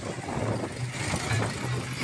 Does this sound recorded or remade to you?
recorded